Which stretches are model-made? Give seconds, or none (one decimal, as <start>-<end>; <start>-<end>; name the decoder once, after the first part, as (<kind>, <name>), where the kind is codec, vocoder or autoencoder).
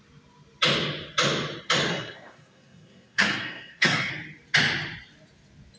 1.9-4.1 (codec, SNAC)